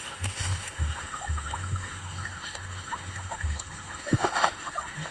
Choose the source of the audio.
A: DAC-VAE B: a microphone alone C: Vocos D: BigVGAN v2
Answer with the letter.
A